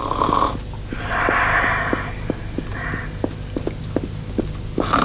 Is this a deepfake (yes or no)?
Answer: no